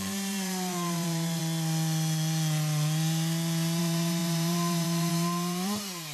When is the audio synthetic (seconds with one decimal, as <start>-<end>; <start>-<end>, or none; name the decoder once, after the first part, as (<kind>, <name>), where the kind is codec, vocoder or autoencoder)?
0.0-1.4 (vocoder, BigVGAN v2); 3.8-6.1